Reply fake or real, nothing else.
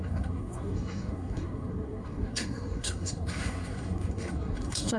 fake